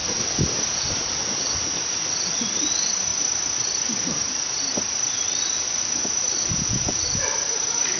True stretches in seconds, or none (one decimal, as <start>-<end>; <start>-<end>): 1.2-3.1